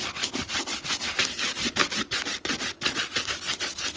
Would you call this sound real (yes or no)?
yes